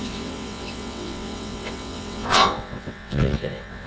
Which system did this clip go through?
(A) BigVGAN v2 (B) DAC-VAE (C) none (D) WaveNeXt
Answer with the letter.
D